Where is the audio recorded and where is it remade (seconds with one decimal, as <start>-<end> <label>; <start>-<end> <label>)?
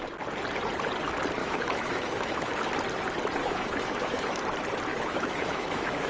0.0-1.4 recorded; 1.4-2.7 remade; 2.7-3.4 recorded; 3.4-4.4 remade; 4.4-4.9 recorded; 4.9-6.1 remade